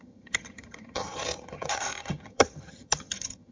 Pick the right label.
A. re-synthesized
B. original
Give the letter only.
A